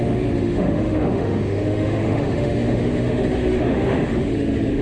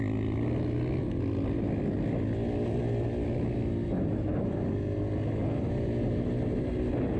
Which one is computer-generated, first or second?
first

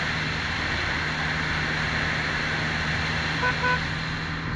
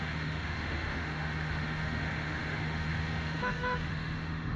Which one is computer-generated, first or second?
second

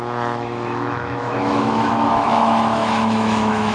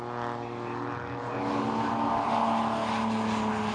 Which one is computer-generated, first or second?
first